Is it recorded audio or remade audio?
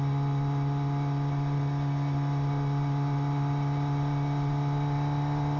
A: recorded